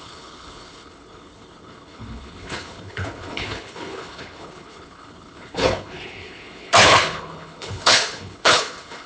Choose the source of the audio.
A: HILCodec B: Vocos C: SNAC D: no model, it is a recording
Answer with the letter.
A